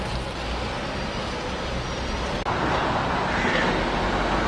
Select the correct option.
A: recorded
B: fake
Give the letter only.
A